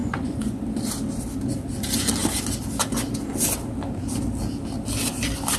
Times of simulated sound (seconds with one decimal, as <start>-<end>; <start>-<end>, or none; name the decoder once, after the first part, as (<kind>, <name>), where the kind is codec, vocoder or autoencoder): 0.0-0.6 (vocoder, Vocos)